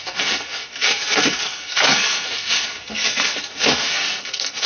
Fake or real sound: fake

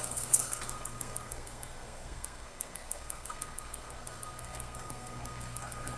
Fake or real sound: fake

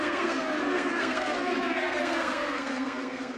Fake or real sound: fake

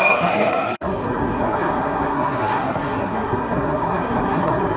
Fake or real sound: fake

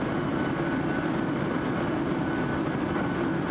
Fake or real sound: real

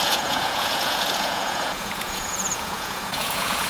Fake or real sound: fake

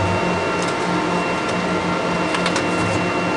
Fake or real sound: real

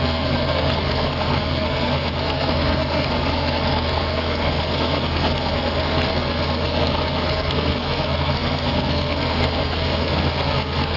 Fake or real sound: fake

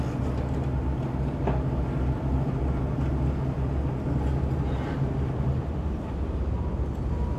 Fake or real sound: real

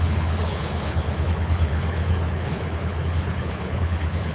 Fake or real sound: fake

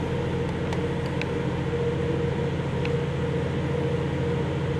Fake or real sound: real